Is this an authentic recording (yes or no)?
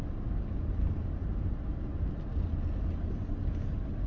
yes